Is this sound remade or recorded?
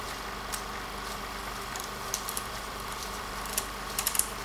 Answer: remade